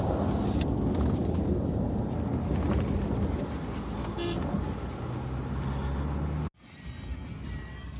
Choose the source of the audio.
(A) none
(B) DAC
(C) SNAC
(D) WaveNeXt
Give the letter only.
A